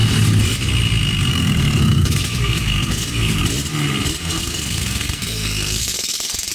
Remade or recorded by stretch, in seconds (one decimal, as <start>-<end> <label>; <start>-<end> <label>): 0.0-1.3 recorded; 1.3-3.4 remade; 3.4-4.2 recorded; 4.2-6.5 remade

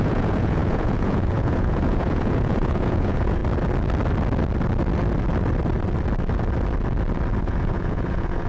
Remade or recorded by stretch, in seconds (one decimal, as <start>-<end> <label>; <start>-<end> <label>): 0.0-3.4 remade; 3.4-7.4 recorded; 7.4-8.5 remade

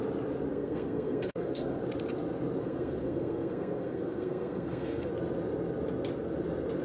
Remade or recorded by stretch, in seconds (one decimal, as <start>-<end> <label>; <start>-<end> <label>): 0.0-0.5 recorded; 0.5-1.8 remade; 1.8-2.6 recorded; 2.6-5.1 remade; 5.1-6.8 recorded

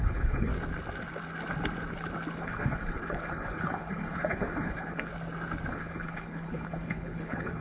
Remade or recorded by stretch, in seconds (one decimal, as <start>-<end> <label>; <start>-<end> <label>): 0.0-0.5 remade; 0.5-2.4 recorded; 2.4-5.1 remade; 5.1-5.7 recorded; 5.7-7.6 remade

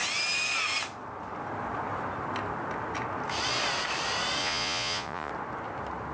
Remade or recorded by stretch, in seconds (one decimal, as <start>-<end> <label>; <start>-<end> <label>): 0.0-4.4 recorded; 4.4-5.3 remade; 5.3-6.1 recorded

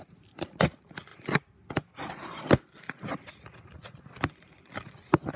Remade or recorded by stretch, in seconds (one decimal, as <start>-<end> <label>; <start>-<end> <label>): 0.0-5.4 recorded